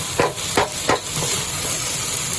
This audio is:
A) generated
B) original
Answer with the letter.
B